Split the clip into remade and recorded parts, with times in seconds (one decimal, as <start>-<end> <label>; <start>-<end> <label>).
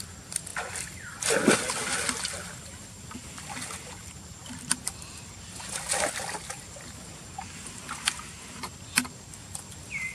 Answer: 0.0-10.1 recorded